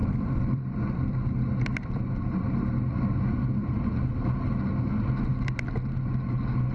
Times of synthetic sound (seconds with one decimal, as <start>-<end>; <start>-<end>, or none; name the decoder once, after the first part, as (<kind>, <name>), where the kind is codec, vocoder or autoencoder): 0.0-2.4 (vocoder, BigVGAN v2)